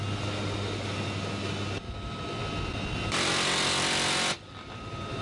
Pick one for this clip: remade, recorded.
recorded